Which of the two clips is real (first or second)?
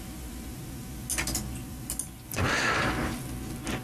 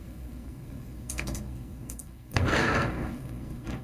first